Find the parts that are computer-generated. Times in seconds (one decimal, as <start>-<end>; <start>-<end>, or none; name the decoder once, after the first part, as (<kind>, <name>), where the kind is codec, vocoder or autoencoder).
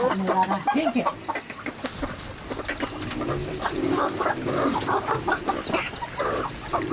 1.1-2.4 (vocoder, BigVGAN v2); 3.4-6.9